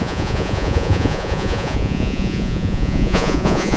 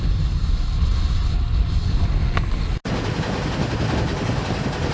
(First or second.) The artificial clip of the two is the first